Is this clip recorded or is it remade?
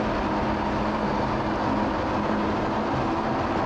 recorded